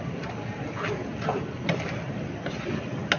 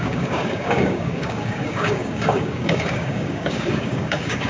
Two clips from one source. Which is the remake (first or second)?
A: second